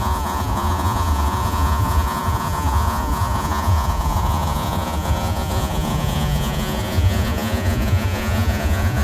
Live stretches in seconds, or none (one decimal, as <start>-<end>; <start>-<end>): none

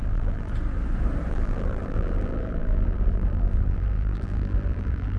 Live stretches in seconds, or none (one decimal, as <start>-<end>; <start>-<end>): 0.5-1.3

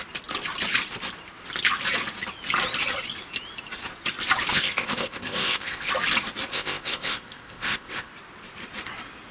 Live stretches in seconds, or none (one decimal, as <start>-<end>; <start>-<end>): 0.0-4.5; 5.9-6.5; 8.1-9.3

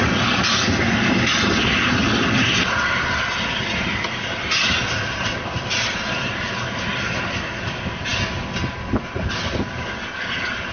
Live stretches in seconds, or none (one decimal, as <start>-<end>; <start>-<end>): 0.0-2.0; 4.3-10.7

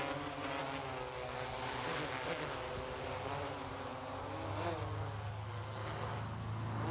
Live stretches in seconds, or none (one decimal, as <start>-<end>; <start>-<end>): 0.0-6.9